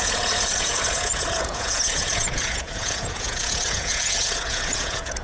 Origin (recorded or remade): remade